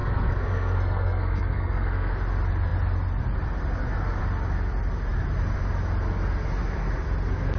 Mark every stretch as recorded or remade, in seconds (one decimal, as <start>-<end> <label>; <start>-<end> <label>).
0.0-2.1 remade; 2.1-7.6 recorded